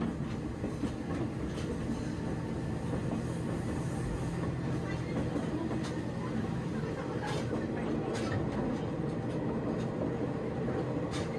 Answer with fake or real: real